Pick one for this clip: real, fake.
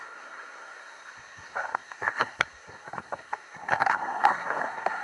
fake